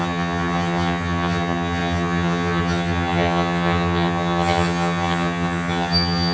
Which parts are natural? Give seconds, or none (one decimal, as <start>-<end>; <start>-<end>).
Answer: none